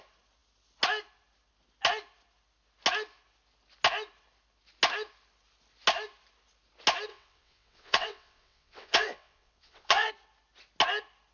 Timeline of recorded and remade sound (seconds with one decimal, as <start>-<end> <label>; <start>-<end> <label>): 0.0-7.1 recorded; 7.1-10.1 remade; 10.1-11.3 recorded